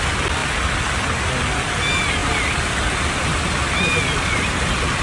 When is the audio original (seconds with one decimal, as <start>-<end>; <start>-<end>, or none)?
0.0-5.0